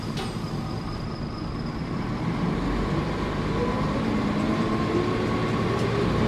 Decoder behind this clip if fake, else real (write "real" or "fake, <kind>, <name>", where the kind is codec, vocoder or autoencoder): fake, vocoder, BigVGAN v2